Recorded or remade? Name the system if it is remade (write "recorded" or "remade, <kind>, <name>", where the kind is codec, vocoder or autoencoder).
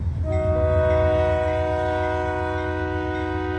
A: recorded